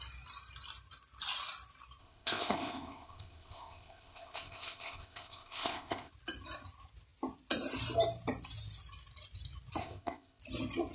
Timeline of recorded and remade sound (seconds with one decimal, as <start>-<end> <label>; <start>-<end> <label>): 0.0-2.0 recorded; 2.0-6.1 remade; 6.1-9.8 recorded; 9.8-10.4 remade; 10.4-10.9 recorded